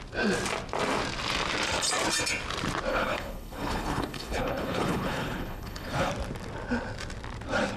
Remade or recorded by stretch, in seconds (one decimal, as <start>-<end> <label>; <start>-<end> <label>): 0.0-2.9 recorded; 2.9-6.1 remade; 6.1-7.8 recorded